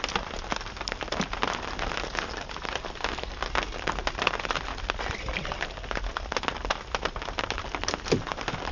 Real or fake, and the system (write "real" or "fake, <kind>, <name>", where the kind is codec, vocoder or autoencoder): real